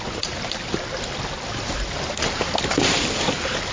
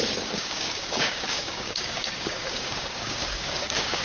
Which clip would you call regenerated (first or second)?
second